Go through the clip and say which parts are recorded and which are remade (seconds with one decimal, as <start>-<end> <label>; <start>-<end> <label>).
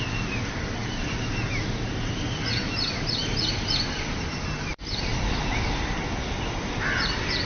0.0-7.5 recorded